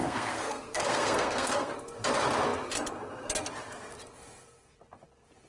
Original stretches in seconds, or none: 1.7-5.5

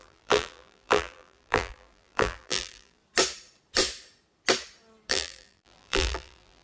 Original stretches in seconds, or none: 3.0-5.1